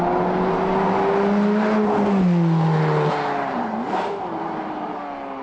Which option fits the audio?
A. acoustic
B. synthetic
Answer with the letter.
A